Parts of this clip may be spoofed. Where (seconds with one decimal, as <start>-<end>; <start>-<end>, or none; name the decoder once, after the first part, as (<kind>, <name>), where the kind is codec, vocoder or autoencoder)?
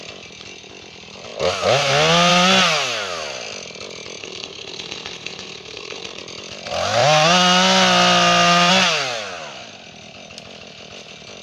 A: 4.2-6.2 (codec, SNAC)